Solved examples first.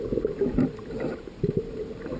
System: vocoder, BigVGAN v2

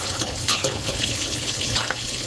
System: codec, HILCodec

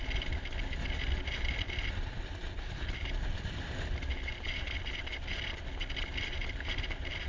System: none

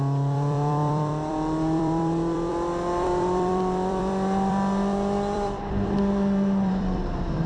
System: vocoder, BigVGAN v2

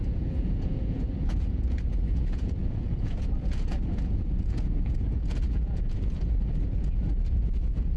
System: vocoder, Vocos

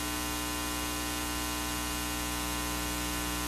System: none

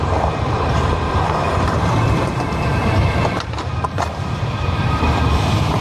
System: vocoder, BigVGAN v2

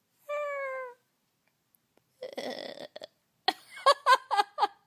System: none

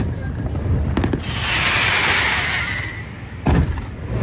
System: none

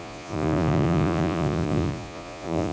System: vocoder, Vocos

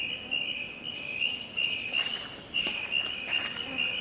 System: none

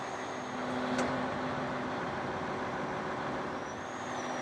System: none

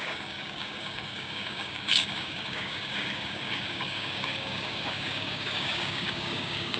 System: codec, DAC